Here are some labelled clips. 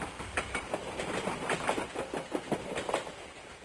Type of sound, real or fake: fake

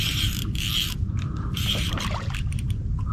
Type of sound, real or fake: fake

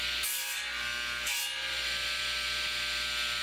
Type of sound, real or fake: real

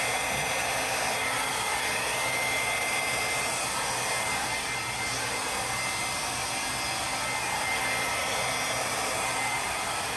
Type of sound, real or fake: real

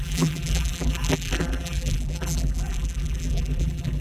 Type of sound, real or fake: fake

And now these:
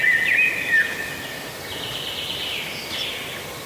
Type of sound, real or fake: real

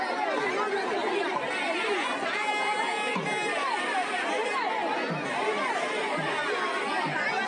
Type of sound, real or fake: real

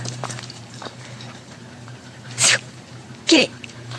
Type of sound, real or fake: fake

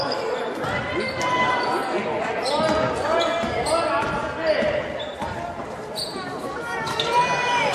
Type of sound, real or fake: real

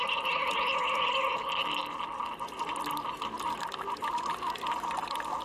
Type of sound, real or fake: real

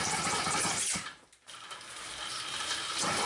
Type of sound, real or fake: fake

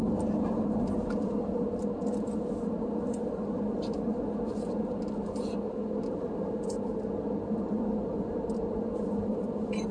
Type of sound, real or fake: real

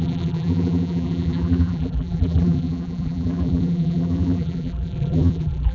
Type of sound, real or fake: fake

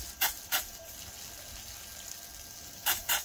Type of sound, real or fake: real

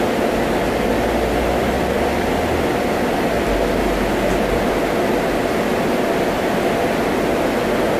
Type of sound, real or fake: real